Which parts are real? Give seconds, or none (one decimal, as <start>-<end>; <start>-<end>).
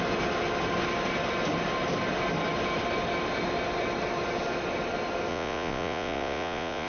0.0-5.3